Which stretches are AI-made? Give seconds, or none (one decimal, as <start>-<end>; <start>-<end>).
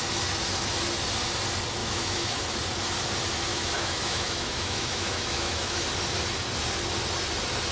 1.8-2.4; 3.5-5.8